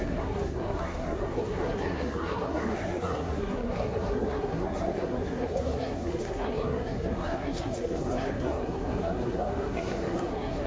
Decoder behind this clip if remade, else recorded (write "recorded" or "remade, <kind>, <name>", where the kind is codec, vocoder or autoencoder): remade, codec, SNAC